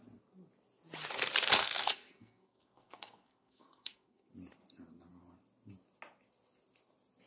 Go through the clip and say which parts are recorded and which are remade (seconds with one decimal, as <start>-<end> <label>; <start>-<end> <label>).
0.0-1.6 recorded; 1.6-4.3 remade; 4.3-7.3 recorded